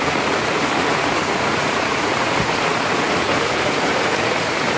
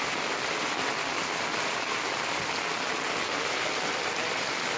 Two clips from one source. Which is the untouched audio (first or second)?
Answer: second